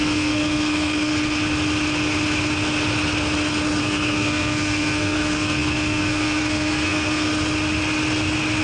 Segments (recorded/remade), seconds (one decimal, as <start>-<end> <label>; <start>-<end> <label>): 0.0-1.1 remade; 1.1-3.8 recorded; 3.8-7.3 remade; 7.3-8.6 recorded